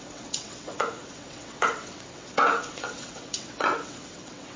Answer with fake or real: fake